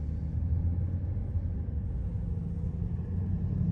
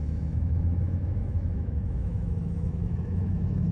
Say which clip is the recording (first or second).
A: first